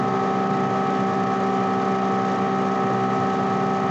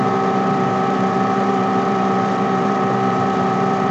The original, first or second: first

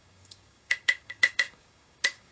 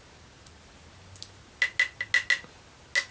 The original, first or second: second